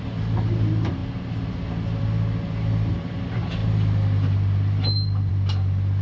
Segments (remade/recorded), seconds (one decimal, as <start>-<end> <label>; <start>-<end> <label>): 0.0-6.0 recorded

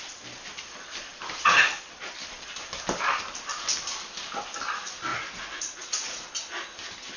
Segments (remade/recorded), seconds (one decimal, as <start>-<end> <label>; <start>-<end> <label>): 0.0-5.1 recorded; 5.1-6.3 remade; 6.3-7.2 recorded

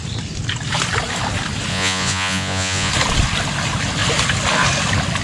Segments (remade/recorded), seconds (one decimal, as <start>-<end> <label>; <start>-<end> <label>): 0.0-1.7 recorded; 1.7-2.9 remade; 2.9-5.2 recorded

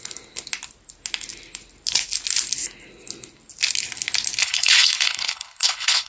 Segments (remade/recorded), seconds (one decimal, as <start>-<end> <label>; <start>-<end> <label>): 0.0-4.4 recorded; 4.4-6.1 remade

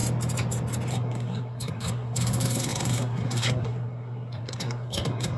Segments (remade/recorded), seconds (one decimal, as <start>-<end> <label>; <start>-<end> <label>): 0.0-0.9 recorded; 0.9-5.4 remade

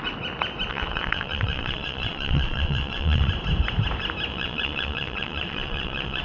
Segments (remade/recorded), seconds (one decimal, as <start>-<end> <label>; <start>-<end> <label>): 0.0-0.7 recorded; 0.7-3.3 remade; 3.3-4.3 recorded; 4.3-6.2 remade

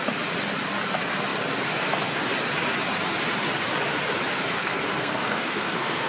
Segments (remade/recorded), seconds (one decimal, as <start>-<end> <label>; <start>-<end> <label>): 0.0-4.6 recorded; 4.6-6.1 remade